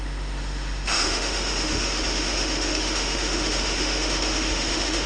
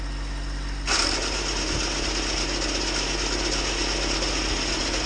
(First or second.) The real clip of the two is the second